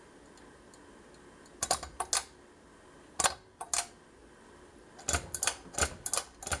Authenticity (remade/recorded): recorded